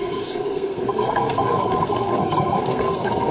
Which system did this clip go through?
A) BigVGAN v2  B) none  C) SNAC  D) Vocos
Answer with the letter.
C